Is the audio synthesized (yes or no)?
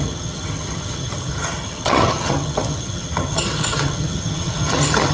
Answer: yes